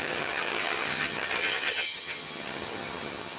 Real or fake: fake